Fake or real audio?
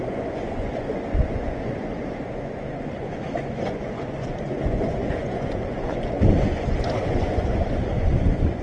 fake